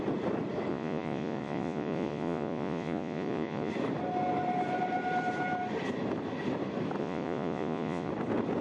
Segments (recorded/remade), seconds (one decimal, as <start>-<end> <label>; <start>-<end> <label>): 0.0-0.7 recorded; 0.7-3.7 remade; 3.7-7.0 recorded; 7.0-8.1 remade; 8.1-8.6 recorded